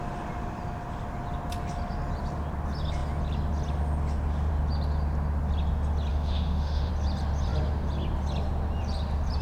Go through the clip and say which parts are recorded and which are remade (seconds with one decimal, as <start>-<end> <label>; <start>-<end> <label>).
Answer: 0.0-6.1 recorded; 6.1-6.9 remade; 6.9-9.4 recorded